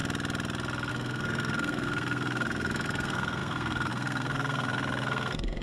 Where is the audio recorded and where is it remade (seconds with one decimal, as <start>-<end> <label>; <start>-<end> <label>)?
0.0-0.9 recorded; 0.9-5.6 remade